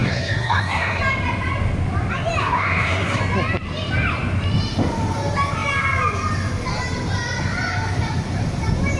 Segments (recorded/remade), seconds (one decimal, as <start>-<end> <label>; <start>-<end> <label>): 0.0-1.0 remade; 1.0-2.4 recorded; 2.4-3.2 remade; 3.2-9.0 recorded